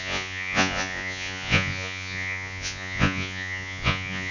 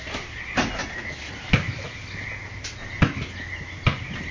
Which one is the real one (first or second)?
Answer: second